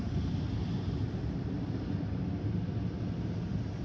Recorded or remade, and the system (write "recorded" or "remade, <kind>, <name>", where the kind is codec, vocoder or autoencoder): recorded